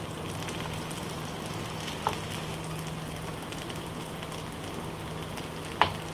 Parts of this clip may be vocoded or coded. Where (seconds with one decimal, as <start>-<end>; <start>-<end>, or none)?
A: 3.3-4.1